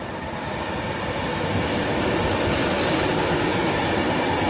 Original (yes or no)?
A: yes